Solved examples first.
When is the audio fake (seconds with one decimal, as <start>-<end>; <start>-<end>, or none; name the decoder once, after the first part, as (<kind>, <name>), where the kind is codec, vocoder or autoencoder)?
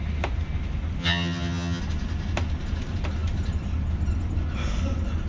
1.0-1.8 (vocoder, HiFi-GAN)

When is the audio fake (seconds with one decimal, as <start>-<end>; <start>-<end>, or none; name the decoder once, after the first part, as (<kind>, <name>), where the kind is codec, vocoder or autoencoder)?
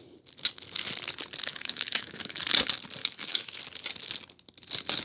1.5-2.4 (autoencoder, DAC-VAE); 3.0-3.6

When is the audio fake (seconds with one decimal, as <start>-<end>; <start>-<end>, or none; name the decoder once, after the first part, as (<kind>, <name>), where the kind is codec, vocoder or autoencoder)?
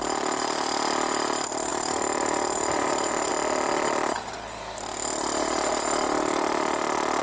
1.7-3.3 (vocoder, BigVGAN v2)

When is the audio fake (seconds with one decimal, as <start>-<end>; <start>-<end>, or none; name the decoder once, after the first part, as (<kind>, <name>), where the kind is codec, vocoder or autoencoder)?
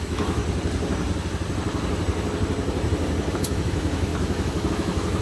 0.0-0.4 (autoencoder, DAC-VAE); 3.3-5.2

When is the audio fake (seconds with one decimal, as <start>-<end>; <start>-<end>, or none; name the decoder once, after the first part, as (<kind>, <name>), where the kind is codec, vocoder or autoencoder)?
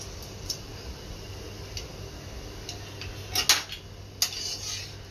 none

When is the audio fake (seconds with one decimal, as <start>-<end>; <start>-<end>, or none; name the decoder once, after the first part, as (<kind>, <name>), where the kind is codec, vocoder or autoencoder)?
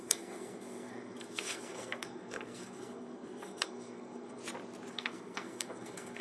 0.0-4.4 (codec, SNAC); 4.9-6.2